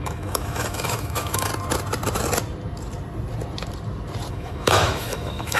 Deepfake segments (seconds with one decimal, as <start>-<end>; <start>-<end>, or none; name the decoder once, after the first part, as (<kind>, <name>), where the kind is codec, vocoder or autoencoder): 0.0-1.5 (autoencoder, DAC-VAE); 4.3-5.6